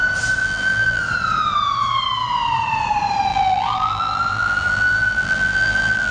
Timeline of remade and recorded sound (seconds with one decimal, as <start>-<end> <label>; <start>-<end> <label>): 0.0-0.4 recorded; 0.4-1.0 remade; 1.0-3.3 recorded; 3.3-6.1 remade